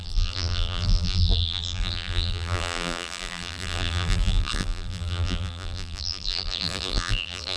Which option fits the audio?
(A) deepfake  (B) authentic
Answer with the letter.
A